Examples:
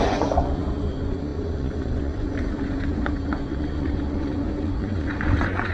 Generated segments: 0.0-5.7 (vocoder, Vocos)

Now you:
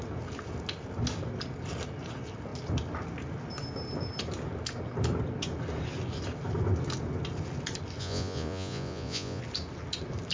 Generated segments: 8.0-9.4 (vocoder, Vocos)

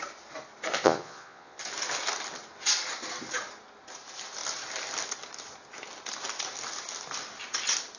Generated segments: 0.7-1.6 (vocoder, Vocos)

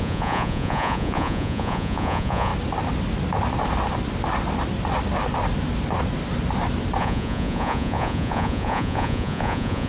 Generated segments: 0.0-2.5 (vocoder, Vocos); 7.0-9.9

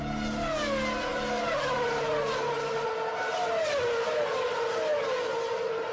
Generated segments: none

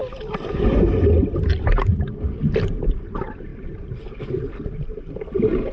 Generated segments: none

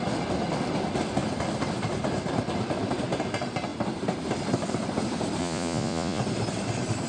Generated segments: 5.4-6.2 (vocoder, Vocos)

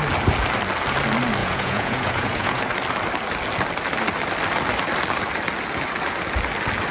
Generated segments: 1.4-2.6 (vocoder, Vocos)